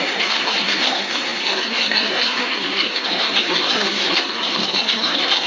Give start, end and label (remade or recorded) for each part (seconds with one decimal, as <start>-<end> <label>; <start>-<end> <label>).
0.0-5.5 remade